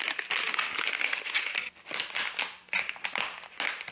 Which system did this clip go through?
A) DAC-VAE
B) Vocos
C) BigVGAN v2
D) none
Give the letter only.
D